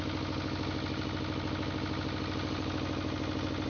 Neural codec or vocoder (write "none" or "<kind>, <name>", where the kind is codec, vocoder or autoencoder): none